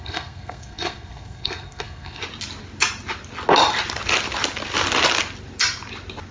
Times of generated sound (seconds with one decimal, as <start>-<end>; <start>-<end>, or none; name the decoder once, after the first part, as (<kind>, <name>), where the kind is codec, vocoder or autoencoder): 0.0-2.2 (codec, SNAC)